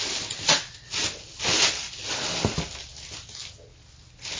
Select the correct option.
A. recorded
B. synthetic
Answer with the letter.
A